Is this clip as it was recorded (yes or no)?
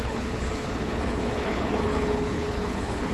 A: no